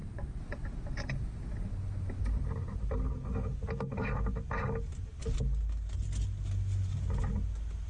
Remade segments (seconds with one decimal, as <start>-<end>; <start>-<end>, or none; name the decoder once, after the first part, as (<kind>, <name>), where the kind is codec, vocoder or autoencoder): none